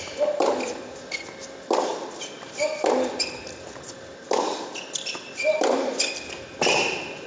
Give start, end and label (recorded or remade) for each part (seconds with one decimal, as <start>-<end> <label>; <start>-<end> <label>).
0.0-7.3 recorded